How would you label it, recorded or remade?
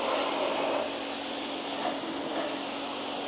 recorded